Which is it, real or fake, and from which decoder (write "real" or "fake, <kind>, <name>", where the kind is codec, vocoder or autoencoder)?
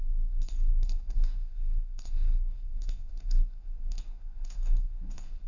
fake, codec, SNAC